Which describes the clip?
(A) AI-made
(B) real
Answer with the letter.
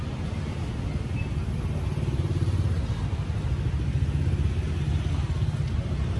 B